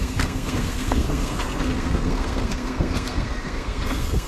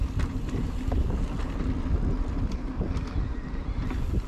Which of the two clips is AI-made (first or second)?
first